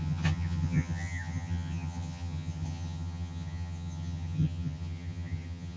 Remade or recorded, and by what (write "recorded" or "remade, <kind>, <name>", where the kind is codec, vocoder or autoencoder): remade, vocoder, HiFi-GAN